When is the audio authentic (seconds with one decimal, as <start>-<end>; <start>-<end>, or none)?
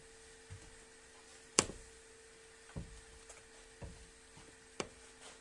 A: 0.0-5.4